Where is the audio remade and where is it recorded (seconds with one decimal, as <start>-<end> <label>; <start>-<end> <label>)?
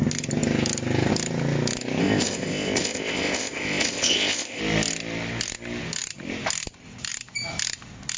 0.0-2.0 recorded; 2.0-4.6 remade; 4.6-8.2 recorded